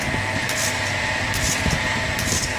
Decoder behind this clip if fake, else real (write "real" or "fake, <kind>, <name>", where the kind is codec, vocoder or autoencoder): fake, vocoder, BigVGAN v2